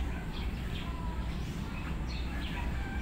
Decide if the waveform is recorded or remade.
remade